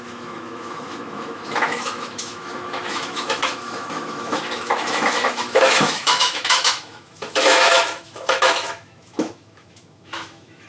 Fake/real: fake